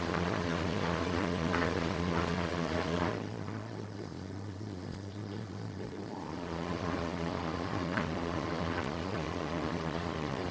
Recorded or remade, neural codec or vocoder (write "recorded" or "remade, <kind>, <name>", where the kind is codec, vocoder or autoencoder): remade, vocoder, Vocos